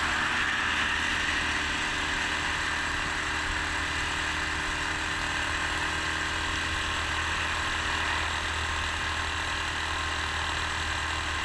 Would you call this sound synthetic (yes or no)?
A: no